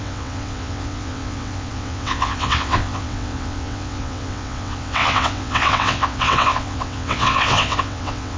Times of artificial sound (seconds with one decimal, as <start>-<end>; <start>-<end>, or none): 0.0-8.4